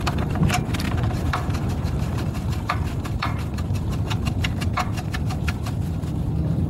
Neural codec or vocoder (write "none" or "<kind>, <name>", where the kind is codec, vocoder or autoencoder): vocoder, BigVGAN v2